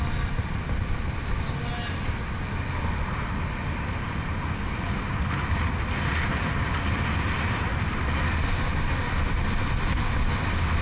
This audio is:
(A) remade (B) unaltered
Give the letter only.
B